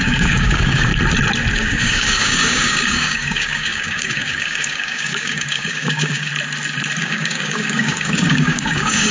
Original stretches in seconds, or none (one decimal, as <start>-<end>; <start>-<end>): 0.9-1.5; 6.3-7.0